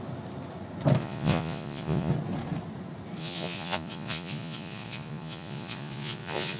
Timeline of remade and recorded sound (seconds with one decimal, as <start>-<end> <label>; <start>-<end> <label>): 0.0-1.0 recorded; 1.0-2.1 remade; 2.1-3.2 recorded; 3.2-6.6 remade